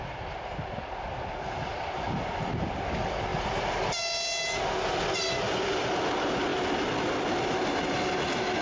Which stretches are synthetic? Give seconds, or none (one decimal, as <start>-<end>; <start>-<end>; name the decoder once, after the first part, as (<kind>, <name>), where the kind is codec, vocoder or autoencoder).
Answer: none